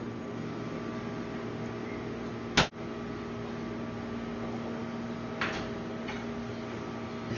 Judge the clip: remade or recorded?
recorded